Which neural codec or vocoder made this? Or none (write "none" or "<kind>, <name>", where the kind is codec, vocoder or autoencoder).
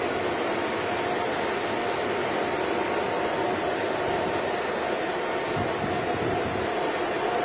none